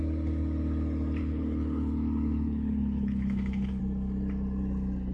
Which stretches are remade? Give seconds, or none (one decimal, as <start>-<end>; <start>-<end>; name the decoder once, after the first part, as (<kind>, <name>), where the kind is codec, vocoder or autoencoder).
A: 1.2-3.8 (codec, HILCodec)